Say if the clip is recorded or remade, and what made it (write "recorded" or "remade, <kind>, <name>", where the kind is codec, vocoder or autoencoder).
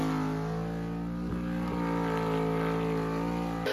recorded